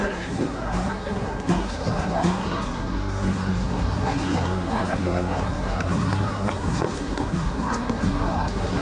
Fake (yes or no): yes